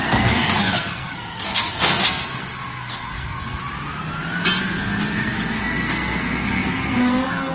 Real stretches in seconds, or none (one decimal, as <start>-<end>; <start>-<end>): 3.6-4.6